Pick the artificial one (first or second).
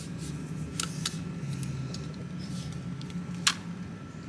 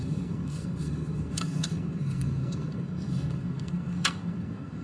second